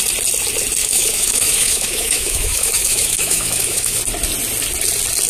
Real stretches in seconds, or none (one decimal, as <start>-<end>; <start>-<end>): 0.0-0.8; 4.0-5.3